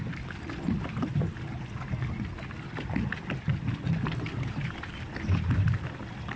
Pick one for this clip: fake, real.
real